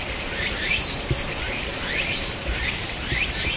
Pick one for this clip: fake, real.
fake